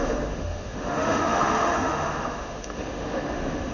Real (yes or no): no